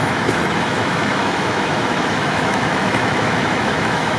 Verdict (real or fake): fake